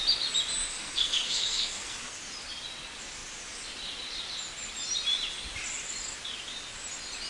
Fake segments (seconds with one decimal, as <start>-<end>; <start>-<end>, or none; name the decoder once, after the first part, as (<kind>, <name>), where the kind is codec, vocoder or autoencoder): 0.7-2.2 (codec, SNAC)